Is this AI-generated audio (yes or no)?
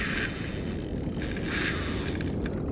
no